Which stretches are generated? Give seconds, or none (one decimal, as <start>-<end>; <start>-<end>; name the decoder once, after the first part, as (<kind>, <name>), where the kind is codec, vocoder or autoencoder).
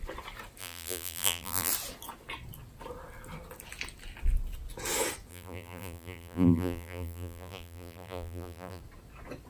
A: 0.6-1.7 (vocoder, BigVGAN v2); 5.3-8.8